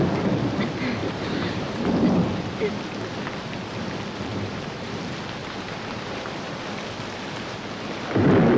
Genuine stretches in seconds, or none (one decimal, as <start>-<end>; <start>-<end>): 0.0-1.0; 1.9-4.3; 5.0-5.4; 6.6-8.6